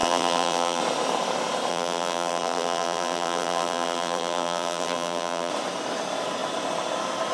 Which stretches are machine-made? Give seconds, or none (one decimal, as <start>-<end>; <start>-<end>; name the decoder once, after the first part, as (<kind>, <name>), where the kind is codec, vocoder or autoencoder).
0.0-0.8 (vocoder, BigVGAN v2); 1.7-5.5